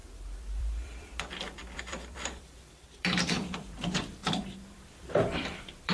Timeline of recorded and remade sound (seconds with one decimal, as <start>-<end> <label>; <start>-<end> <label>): 0.0-0.6 recorded; 0.6-5.9 remade

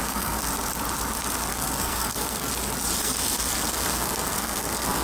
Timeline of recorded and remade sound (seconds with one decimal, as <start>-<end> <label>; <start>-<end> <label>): 0.0-0.4 remade; 0.4-1.5 recorded; 1.5-2.5 remade; 2.5-3.0 recorded; 3.0-5.0 remade

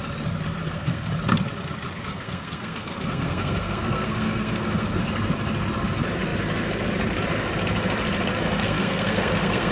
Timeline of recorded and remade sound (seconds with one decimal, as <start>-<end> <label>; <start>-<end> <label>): 0.0-0.6 recorded; 0.6-1.1 remade; 1.1-2.1 recorded; 2.1-5.0 remade; 5.0-8.6 recorded; 8.6-9.7 remade

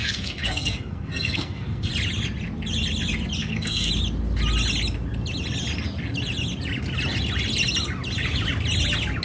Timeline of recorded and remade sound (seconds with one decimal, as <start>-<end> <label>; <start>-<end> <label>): 0.0-1.9 remade; 1.9-3.4 recorded; 3.4-3.9 remade; 3.9-9.2 recorded

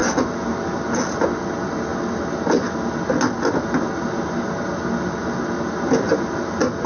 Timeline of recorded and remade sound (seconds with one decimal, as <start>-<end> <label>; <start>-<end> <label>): 0.0-6.9 recorded

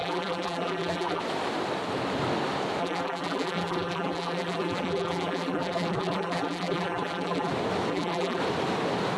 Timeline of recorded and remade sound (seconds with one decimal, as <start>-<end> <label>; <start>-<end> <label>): 0.0-1.2 remade; 1.2-2.8 recorded; 2.8-7.5 remade; 7.5-7.9 recorded; 7.9-8.4 remade; 8.4-9.2 recorded

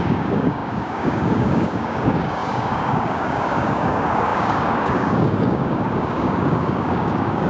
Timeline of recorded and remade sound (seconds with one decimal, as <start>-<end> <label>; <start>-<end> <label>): 0.0-7.5 remade